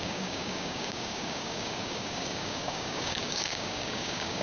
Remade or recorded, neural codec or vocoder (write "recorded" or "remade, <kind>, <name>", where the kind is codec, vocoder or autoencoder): remade, codec, DAC